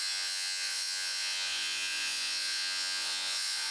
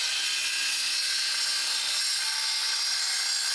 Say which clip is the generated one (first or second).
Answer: first